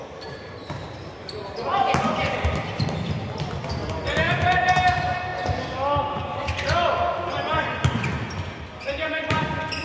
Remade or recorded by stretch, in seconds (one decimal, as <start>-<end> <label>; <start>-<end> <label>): 0.0-1.6 remade; 1.6-8.1 recorded; 8.1-8.6 remade; 8.6-9.8 recorded